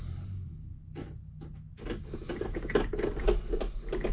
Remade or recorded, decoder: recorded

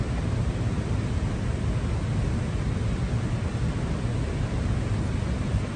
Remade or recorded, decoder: recorded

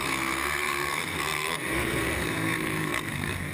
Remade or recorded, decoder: remade, codec, SNAC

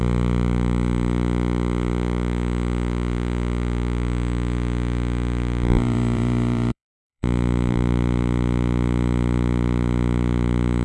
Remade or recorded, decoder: remade, vocoder, BigVGAN v2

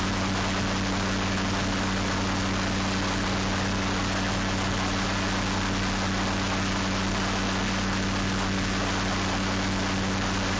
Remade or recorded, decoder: recorded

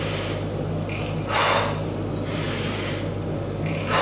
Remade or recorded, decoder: recorded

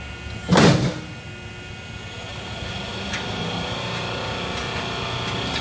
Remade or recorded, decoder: recorded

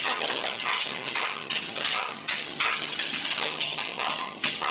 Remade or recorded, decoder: remade, vocoder, HiFi-GAN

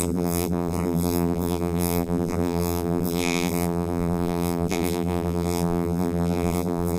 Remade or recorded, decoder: remade, vocoder, BigVGAN v2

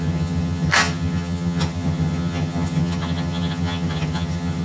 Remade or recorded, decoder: remade, vocoder, HiFi-GAN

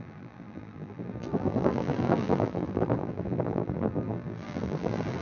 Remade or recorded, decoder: remade, vocoder, BigVGAN v2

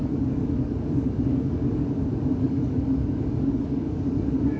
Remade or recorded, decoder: remade, codec, DAC